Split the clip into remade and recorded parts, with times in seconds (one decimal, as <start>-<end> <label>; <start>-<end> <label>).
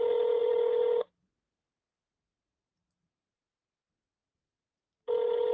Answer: 0.0-0.4 recorded; 0.4-3.7 remade; 3.7-4.2 recorded; 4.2-5.5 remade